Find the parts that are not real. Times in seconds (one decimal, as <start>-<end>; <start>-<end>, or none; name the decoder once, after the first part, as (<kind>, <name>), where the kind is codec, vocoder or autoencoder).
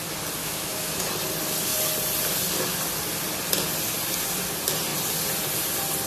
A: 0.4-1.0 (autoencoder, DAC-VAE)